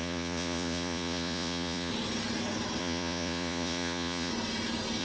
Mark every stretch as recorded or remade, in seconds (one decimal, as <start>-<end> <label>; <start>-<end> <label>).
0.0-1.9 remade; 1.9-2.8 recorded; 2.8-4.3 remade; 4.3-5.0 recorded